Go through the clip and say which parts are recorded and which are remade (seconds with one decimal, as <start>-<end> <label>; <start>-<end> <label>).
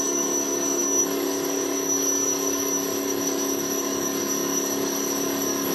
0.0-5.7 remade